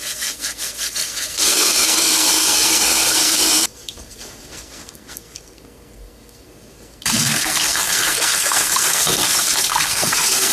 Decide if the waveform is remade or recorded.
remade